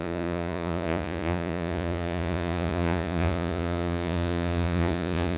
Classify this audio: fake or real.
fake